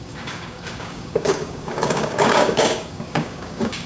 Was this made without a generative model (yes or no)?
no